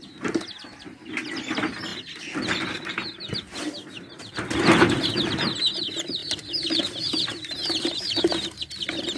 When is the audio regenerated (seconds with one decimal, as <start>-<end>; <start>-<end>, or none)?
6.2-8.1

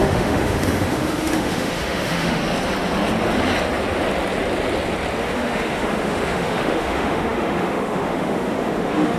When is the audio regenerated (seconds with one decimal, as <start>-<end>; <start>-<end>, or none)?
0.0-2.4; 5.2-9.2

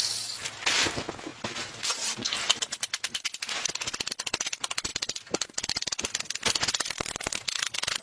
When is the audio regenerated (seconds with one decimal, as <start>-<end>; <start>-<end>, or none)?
4.9-5.7

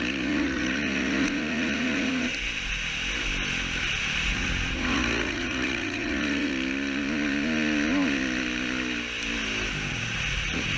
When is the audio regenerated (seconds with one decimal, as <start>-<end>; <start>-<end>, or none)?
0.0-2.3; 4.3-6.5; 9.9-10.8

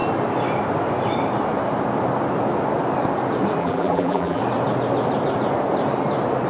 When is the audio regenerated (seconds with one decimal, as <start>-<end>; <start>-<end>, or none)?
3.6-4.4

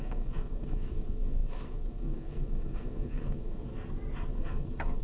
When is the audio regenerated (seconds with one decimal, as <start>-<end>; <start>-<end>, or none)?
0.0-3.7; 4.3-5.0

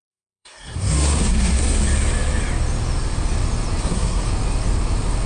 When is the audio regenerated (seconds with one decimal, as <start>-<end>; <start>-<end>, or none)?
0.0-1.8; 3.8-4.3

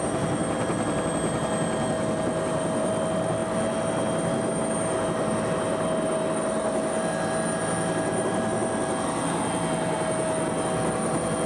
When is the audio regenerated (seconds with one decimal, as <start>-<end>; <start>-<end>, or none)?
none